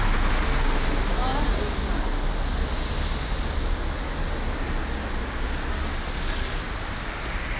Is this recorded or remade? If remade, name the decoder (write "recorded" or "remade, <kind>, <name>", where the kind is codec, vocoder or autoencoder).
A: recorded